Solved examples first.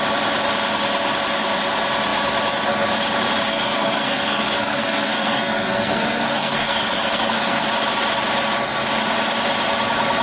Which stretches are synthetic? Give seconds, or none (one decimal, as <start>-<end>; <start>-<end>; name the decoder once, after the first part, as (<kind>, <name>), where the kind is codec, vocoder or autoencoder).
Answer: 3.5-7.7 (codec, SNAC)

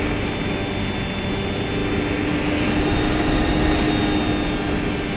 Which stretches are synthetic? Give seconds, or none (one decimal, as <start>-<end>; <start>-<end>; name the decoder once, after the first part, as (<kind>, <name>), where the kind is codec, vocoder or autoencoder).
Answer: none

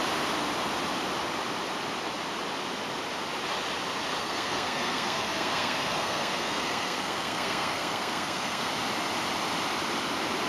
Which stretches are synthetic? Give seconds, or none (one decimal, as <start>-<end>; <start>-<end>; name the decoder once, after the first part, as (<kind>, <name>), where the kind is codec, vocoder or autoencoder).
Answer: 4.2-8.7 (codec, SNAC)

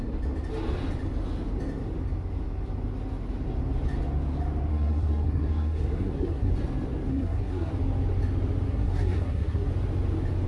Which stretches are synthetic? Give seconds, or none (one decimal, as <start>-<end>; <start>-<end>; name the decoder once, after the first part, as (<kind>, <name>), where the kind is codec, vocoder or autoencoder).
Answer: 4.7-6.5 (codec, SNAC); 7.1-7.7; 8.7-9.7

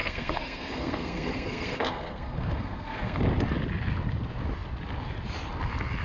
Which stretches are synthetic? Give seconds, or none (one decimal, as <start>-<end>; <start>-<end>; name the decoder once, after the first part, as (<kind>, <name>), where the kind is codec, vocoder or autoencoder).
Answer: 0.0-3.2 (codec, SNAC)